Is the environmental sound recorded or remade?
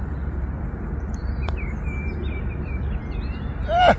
remade